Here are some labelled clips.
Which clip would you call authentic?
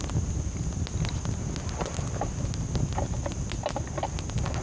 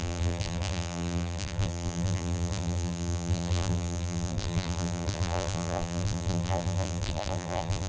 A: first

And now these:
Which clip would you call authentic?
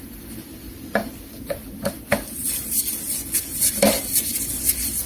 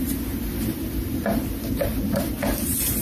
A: second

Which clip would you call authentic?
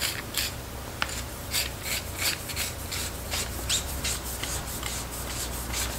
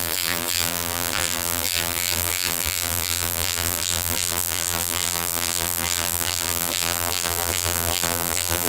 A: first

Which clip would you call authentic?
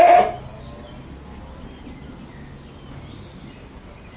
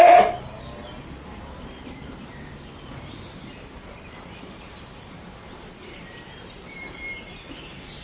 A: first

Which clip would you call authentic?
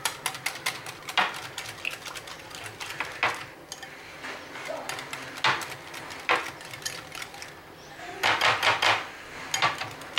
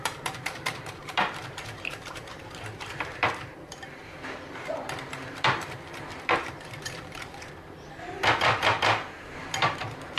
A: first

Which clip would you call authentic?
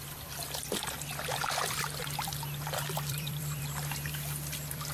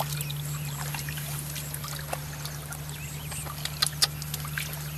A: second